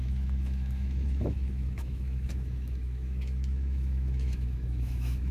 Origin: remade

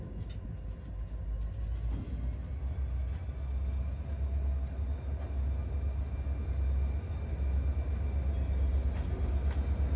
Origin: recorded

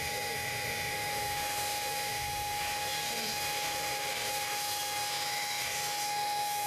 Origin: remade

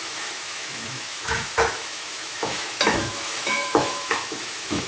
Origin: remade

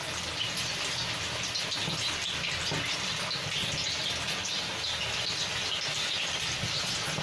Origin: recorded